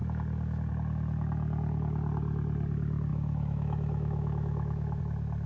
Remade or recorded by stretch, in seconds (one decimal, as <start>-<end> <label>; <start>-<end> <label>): 0.0-3.1 recorded; 3.1-5.0 remade; 5.0-5.5 recorded